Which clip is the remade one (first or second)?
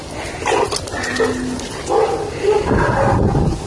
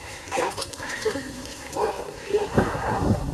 second